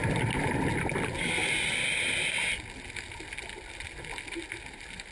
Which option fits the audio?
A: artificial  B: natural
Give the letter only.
B